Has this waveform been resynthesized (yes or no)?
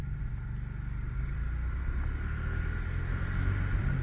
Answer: no